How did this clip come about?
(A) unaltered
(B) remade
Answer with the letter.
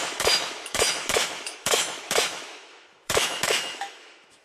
B